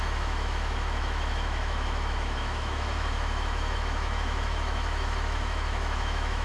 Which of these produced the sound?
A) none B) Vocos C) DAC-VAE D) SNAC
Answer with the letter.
C